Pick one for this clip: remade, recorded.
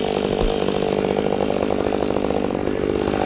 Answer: recorded